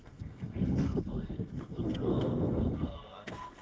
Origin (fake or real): fake